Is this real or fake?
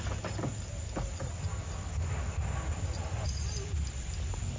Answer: real